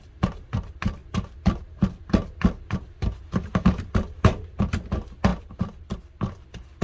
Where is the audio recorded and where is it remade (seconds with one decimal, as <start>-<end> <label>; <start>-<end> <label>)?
0.0-6.8 recorded